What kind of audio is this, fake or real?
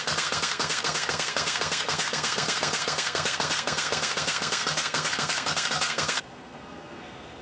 fake